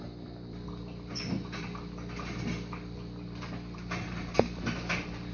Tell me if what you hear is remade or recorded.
recorded